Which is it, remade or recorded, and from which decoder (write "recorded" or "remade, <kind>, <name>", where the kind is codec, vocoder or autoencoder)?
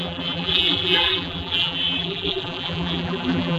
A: remade, vocoder, BigVGAN v2